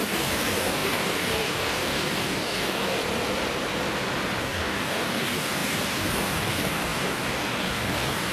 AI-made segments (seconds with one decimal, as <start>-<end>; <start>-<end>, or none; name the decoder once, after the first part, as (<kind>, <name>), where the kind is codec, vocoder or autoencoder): 0.0-3.0 (codec, DAC); 4.4-8.3